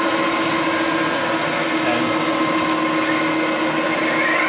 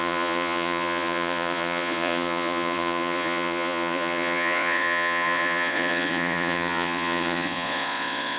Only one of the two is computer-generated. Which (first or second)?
second